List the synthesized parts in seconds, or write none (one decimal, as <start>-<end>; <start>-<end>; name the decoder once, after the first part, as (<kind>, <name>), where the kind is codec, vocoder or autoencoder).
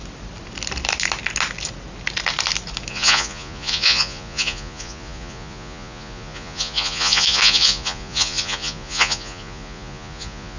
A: 2.9-10.6 (vocoder, Vocos)